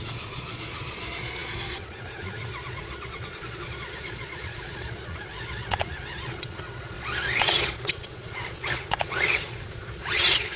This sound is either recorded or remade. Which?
remade